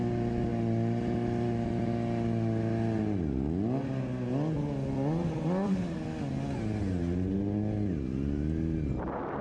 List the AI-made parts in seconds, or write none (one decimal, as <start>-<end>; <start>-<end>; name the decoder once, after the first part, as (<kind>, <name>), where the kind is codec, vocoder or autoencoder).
none

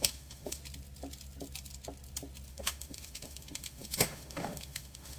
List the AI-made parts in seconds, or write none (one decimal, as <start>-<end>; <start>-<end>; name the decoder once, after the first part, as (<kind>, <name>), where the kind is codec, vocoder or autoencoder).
0.0-0.6 (autoencoder, DAC-VAE); 2.5-5.2

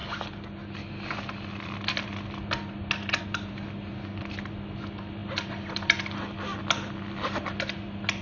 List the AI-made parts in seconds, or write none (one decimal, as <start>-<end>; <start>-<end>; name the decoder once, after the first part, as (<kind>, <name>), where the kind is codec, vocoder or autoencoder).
5.2-6.6 (vocoder, BigVGAN v2)

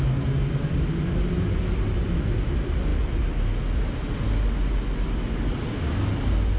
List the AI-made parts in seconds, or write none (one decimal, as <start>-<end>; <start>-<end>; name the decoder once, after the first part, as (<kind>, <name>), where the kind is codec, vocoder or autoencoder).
none

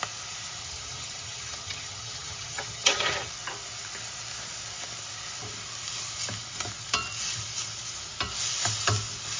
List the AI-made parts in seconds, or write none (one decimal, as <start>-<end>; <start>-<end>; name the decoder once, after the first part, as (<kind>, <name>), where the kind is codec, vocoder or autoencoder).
0.6-3.3 (vocoder, HiFi-GAN)